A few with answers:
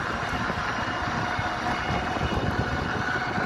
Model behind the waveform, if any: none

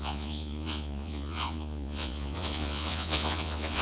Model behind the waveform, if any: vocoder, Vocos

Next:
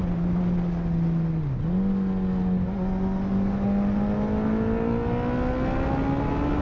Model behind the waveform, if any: none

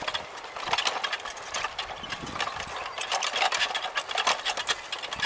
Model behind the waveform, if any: none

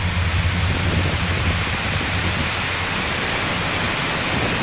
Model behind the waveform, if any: none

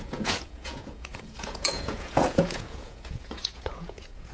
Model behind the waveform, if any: vocoder, Vocos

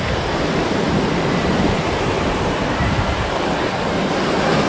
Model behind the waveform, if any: none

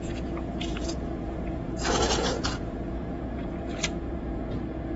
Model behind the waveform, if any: vocoder, Vocos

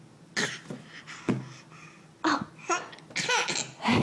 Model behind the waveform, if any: none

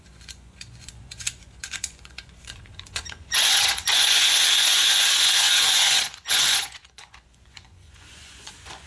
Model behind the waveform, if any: vocoder, Vocos